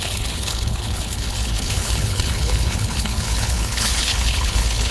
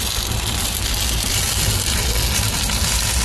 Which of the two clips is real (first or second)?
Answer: second